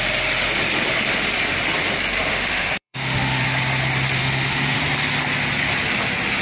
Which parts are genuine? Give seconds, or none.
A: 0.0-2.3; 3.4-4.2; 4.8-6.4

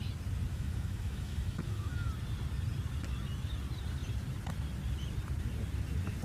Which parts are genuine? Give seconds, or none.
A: 0.0-0.5; 2.1-6.2

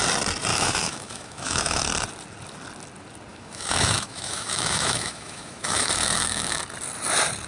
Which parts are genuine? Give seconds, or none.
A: 0.0-0.5; 1.8-3.3; 6.6-7.5

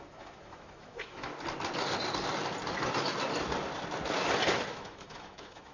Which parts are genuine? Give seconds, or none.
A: 1.3-4.7